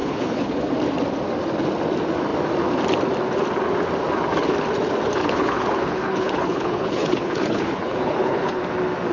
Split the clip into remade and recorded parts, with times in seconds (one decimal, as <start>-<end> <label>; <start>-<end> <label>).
0.0-0.7 remade; 0.7-5.2 recorded; 5.2-8.6 remade; 8.6-9.1 recorded